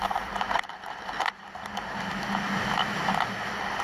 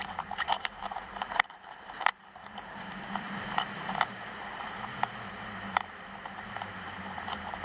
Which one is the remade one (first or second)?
second